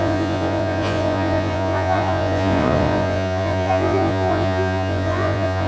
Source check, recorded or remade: remade